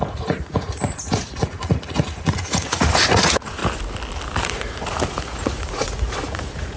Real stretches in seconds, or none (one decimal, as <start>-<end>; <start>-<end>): 3.6-4.4